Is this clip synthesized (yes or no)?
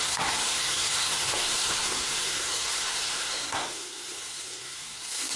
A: yes